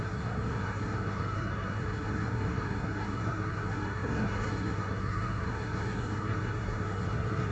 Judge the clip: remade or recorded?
remade